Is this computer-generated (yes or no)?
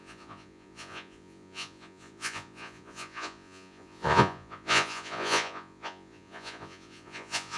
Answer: yes